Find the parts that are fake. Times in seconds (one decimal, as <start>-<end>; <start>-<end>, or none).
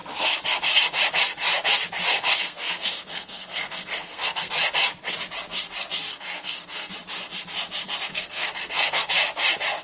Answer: 2.1-4.5; 6.1-6.9; 8.1-9.1